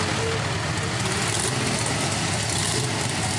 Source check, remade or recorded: recorded